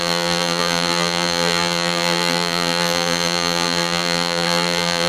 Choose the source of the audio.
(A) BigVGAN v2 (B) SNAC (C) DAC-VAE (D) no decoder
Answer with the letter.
A